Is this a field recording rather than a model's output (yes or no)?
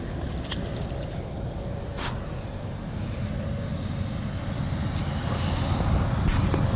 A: yes